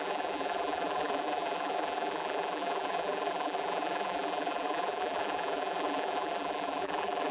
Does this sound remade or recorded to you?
remade